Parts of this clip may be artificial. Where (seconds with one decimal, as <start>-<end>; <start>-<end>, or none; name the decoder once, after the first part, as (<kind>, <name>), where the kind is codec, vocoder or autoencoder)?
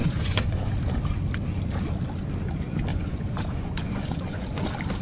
0.0-0.7 (vocoder, Vocos); 2.9-4.6